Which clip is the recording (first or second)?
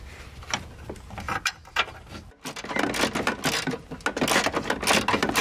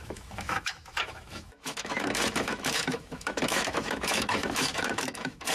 first